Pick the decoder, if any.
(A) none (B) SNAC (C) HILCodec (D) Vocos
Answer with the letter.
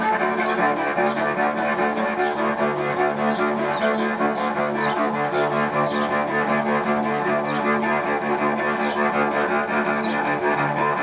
A